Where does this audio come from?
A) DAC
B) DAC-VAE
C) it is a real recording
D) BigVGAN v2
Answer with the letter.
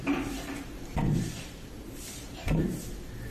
D